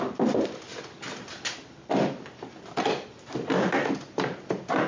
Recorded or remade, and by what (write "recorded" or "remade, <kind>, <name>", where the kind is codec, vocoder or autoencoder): remade, vocoder, BigVGAN v2